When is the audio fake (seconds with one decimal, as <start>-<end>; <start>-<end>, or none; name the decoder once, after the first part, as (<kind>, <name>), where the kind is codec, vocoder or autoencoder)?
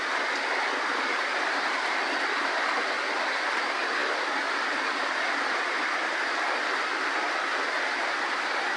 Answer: none